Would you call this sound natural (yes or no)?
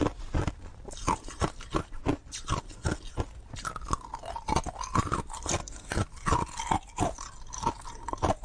yes